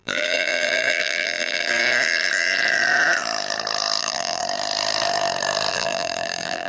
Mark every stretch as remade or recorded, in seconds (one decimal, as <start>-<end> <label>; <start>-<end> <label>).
0.0-1.8 remade; 1.8-4.0 recorded; 4.0-4.4 remade; 4.4-5.7 recorded; 5.7-6.7 remade